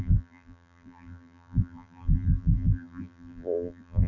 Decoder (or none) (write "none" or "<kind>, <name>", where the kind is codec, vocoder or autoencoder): vocoder, BigVGAN v2